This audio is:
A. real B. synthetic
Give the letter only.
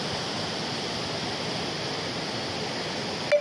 A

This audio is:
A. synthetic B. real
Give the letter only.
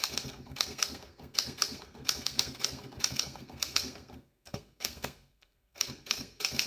A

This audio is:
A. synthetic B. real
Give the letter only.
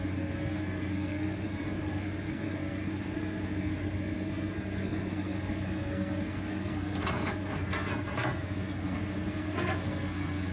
A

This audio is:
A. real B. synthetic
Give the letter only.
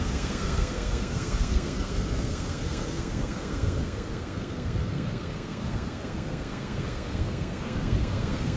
B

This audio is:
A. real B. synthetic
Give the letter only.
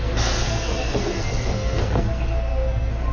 B